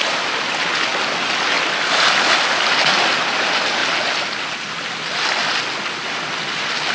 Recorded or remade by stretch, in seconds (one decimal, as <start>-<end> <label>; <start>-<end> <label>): 0.0-6.9 recorded